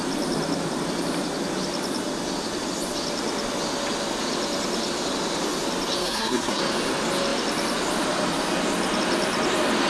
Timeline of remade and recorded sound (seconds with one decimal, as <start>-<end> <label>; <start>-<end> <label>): 0.0-6.0 recorded; 6.0-6.6 remade; 6.6-9.9 recorded